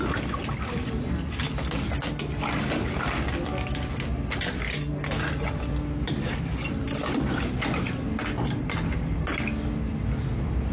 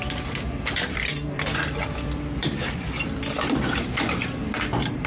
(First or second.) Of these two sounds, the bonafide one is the first